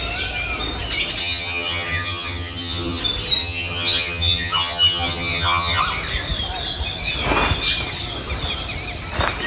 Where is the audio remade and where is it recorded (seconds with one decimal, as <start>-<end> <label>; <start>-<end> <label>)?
0.0-1.2 recorded; 1.2-3.0 remade; 3.0-3.4 recorded; 3.4-5.8 remade; 5.8-9.5 recorded